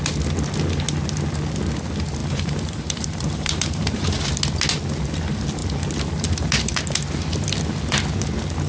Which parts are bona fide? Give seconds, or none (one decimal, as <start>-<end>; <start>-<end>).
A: 0.0-2.2; 4.2-8.7